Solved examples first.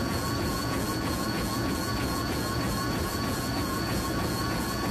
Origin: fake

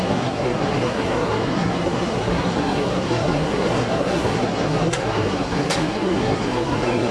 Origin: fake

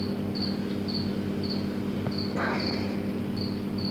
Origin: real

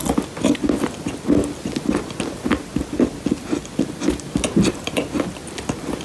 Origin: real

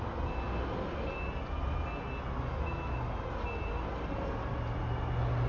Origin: real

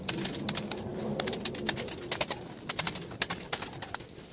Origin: real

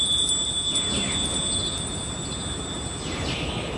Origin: real